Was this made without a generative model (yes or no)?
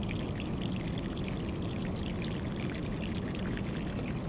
yes